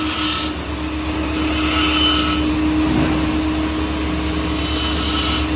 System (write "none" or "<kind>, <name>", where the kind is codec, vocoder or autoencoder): none